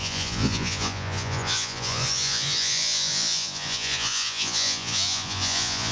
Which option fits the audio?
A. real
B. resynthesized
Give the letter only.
B